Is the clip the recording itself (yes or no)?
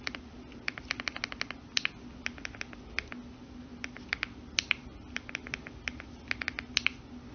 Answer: yes